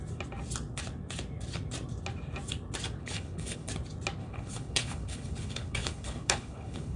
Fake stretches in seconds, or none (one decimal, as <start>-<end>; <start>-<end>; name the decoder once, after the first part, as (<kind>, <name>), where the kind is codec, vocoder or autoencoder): 3.0-3.7 (codec, HILCodec); 4.2-7.0